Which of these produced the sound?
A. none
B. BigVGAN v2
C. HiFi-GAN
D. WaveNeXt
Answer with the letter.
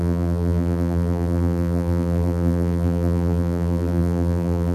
B